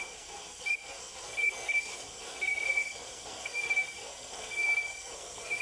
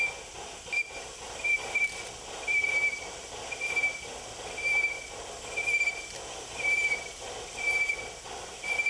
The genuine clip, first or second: second